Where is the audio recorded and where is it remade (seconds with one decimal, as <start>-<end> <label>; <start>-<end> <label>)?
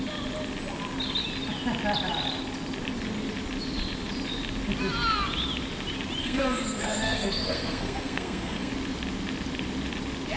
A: 0.0-6.2 recorded; 6.2-8.7 remade; 8.7-10.4 recorded